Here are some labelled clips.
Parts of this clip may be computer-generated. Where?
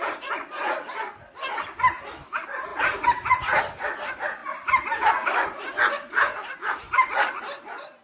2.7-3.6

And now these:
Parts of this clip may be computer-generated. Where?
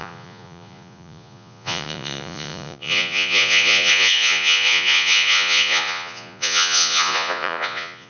0.0-8.1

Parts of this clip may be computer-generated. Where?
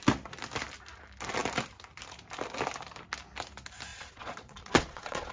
3.9-5.3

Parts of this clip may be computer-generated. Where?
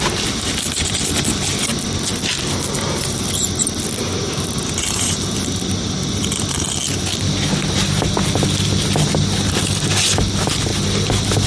none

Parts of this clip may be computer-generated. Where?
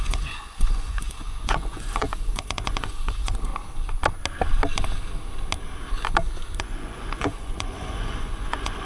0.0-3.5; 6.6-8.8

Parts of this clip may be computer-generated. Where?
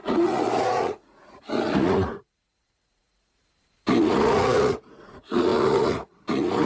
0.0-3.4; 4.0-6.7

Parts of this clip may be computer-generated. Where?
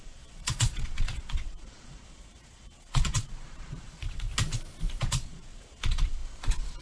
0.0-4.3; 5.0-6.8